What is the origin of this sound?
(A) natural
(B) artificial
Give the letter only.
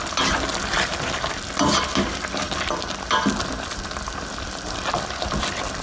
A